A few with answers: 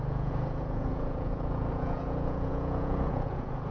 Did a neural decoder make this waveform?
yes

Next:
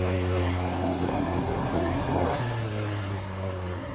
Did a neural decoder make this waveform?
yes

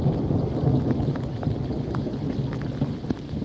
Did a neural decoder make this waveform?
no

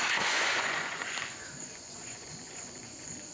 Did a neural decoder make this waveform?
yes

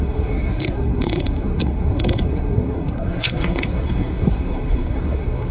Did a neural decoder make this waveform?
yes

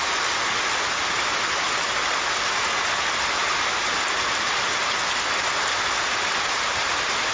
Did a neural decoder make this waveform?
no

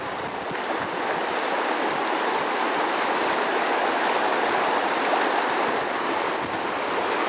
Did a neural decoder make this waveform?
no